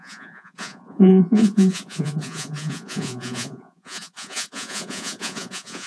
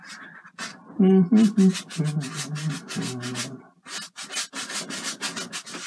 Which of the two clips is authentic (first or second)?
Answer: second